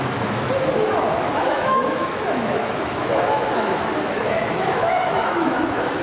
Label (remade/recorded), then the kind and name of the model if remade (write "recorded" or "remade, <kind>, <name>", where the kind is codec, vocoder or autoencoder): remade, autoencoder, DAC-VAE